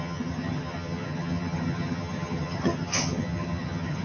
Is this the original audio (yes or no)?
no